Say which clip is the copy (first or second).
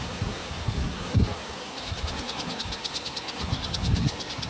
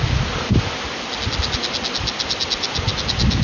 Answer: first